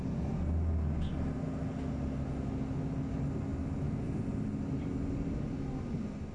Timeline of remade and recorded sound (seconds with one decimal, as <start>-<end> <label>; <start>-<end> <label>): 0.0-6.3 recorded